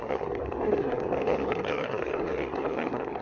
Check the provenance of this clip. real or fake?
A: fake